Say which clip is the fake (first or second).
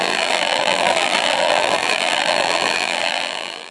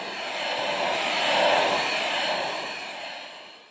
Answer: first